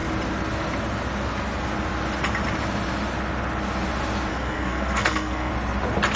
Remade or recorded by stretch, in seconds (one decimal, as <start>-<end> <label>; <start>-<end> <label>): 0.0-4.3 recorded; 4.3-5.5 remade; 5.5-6.2 recorded